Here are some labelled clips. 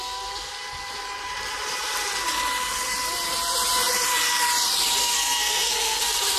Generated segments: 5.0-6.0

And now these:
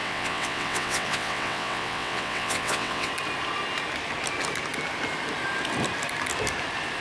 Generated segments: 0.0-3.1

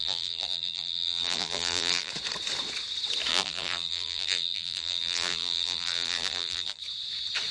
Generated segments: 0.0-2.1; 3.3-6.8

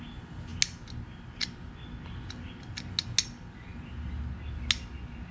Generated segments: none